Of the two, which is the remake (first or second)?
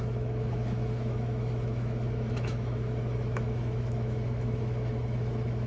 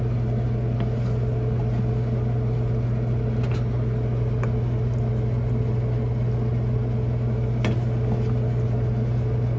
first